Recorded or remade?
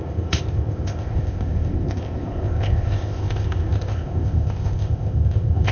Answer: remade